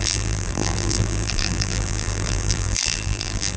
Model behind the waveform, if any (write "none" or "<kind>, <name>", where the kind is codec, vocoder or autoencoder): vocoder, BigVGAN v2